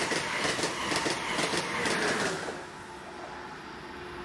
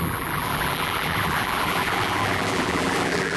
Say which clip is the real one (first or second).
first